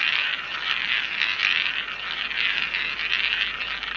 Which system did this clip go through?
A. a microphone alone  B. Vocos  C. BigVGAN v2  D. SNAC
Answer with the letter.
C